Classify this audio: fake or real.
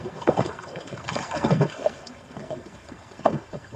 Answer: fake